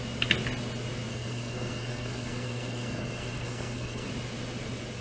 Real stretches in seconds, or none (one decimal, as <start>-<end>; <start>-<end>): 0.0-1.1; 4.1-5.0